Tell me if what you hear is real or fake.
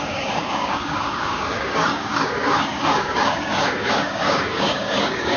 fake